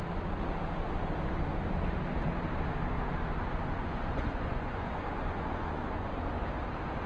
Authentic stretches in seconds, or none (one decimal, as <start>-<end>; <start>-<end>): 0.0-3.8; 6.1-7.1